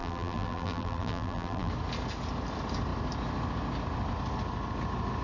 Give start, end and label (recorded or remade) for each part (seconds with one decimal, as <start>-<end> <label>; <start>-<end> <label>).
0.0-1.7 remade; 1.7-5.2 recorded